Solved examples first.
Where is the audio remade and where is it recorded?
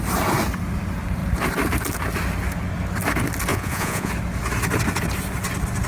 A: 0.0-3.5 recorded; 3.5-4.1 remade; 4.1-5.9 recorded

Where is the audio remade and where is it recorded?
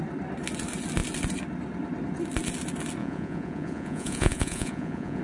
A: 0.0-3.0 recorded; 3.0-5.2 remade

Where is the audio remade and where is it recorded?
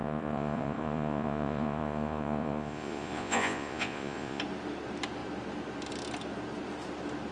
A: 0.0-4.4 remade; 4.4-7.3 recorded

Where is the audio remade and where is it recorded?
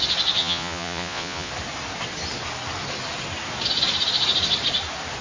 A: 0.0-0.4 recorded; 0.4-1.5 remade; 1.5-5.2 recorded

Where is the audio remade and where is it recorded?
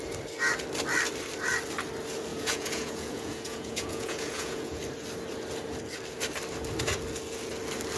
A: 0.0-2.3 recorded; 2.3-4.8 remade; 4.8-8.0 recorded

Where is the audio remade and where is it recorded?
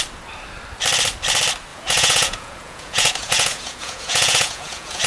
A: 0.0-1.7 recorded; 1.7-5.1 remade